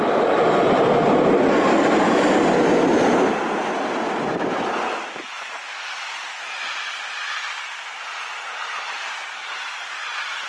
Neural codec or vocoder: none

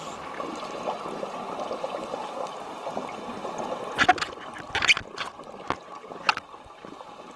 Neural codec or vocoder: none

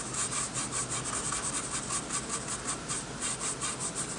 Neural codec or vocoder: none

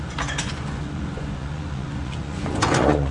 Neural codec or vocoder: vocoder, Vocos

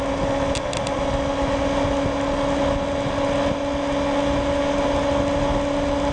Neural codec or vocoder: none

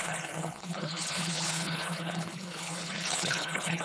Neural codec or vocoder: codec, HILCodec